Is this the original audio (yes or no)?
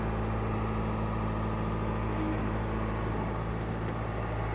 yes